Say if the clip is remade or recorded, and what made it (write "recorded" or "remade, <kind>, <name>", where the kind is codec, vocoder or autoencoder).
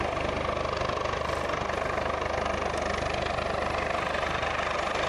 recorded